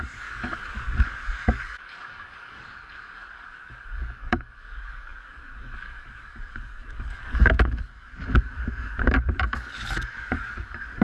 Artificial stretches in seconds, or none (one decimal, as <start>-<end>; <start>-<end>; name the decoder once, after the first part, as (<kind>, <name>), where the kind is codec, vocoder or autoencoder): 0.0-11.0 (codec, DAC)